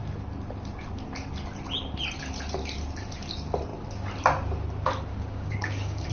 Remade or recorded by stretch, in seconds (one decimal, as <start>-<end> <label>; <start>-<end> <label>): 0.0-5.1 recorded; 5.1-6.1 remade

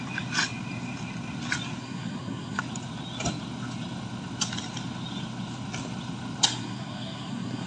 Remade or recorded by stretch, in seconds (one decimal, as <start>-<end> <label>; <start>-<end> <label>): 0.0-1.8 recorded; 1.8-2.6 remade; 2.6-6.5 recorded; 6.5-7.7 remade

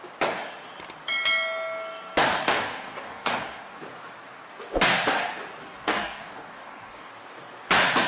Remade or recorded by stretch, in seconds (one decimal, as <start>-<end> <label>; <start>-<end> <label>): 0.0-2.3 recorded; 2.3-3.8 remade; 3.8-5.6 recorded; 5.6-7.1 remade; 7.1-8.1 recorded

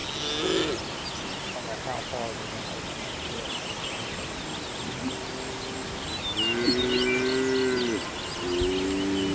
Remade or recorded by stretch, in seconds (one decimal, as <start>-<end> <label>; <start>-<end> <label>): 0.0-9.3 recorded

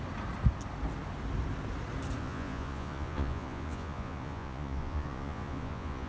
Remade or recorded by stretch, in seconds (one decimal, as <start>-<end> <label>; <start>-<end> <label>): 0.0-2.2 recorded; 2.2-6.1 remade